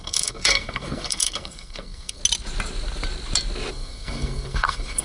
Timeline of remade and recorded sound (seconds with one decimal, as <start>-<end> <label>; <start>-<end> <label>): 0.0-2.2 remade; 2.2-3.7 recorded; 3.7-5.0 remade